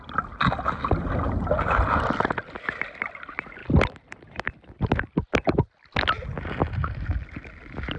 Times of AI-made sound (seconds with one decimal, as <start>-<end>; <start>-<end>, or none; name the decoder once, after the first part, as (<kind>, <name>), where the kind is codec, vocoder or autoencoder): none